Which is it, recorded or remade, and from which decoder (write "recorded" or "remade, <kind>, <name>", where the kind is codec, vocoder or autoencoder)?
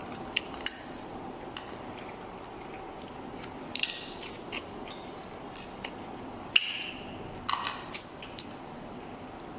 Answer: recorded